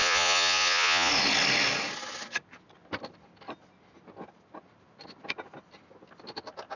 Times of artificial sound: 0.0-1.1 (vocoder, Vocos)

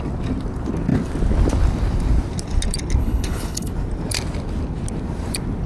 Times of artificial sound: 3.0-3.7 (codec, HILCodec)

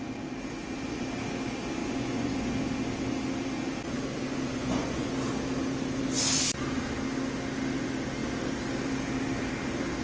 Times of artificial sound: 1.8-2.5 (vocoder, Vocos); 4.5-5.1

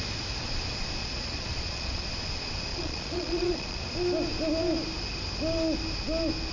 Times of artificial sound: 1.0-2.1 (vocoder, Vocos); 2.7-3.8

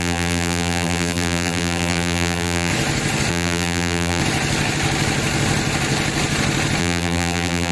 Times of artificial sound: 0.0-2.7 (vocoder, BigVGAN v2); 3.3-4.2; 6.8-7.7